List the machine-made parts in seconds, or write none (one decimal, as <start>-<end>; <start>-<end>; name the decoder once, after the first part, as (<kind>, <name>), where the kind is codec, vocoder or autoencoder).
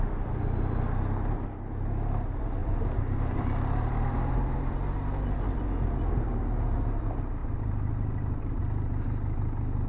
2.6-4.7 (vocoder, BigVGAN v2); 7.4-8.6